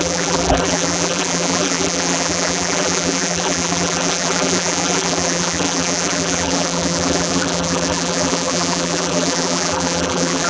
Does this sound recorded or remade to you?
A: remade